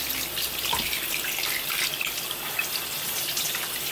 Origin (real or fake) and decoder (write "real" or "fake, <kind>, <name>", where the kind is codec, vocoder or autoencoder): real